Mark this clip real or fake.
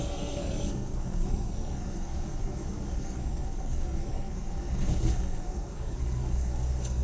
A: fake